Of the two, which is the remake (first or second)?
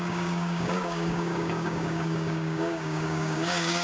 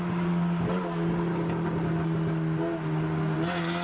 first